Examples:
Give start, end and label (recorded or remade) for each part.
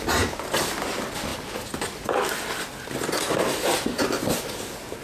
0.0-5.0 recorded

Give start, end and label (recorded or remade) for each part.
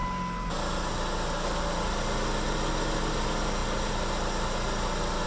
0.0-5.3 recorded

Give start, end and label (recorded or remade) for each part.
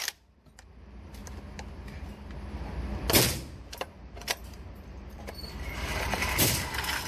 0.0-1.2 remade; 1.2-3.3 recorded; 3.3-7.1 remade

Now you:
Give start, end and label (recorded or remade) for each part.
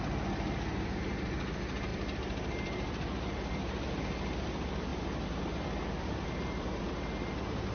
0.0-1.9 recorded; 1.9-3.5 remade; 3.5-4.9 recorded; 4.9-6.8 remade; 6.8-7.7 recorded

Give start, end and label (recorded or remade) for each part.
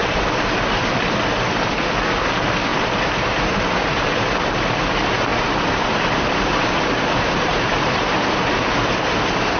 0.0-2.7 recorded; 2.7-4.6 remade; 4.6-5.3 recorded; 5.3-8.6 remade; 8.6-9.6 recorded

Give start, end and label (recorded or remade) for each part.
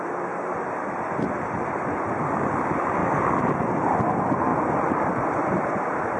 0.0-3.0 recorded; 3.0-3.6 remade; 3.6-4.5 recorded; 4.5-5.3 remade; 5.3-6.2 recorded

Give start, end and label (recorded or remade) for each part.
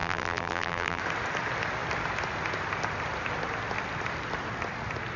0.0-1.0 remade; 1.0-5.2 recorded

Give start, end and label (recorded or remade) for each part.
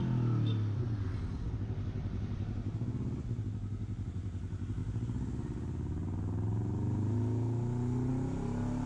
0.0-8.9 recorded